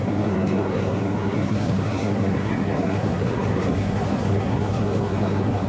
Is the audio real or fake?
fake